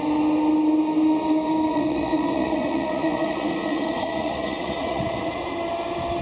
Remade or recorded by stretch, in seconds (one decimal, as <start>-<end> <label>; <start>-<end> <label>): 0.0-1.7 recorded; 1.7-5.4 remade; 5.4-6.2 recorded